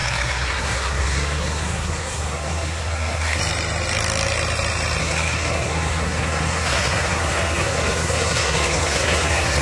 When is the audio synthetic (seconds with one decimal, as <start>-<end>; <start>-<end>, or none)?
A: 0.0-3.4; 5.0-9.6